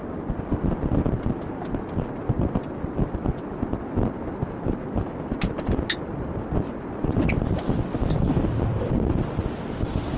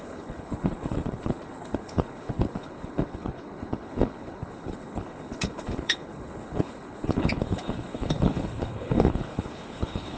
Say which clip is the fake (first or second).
second